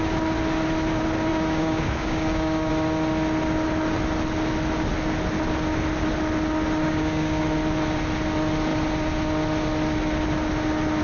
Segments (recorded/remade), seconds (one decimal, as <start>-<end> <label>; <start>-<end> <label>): 0.0-1.3 recorded; 1.3-2.7 remade; 2.7-6.8 recorded; 6.8-7.4 remade; 7.4-11.0 recorded